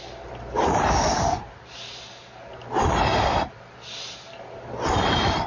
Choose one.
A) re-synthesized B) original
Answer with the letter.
B